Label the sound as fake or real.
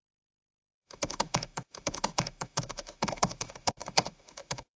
fake